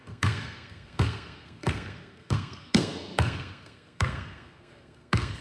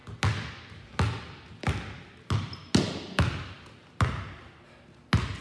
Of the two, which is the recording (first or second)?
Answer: second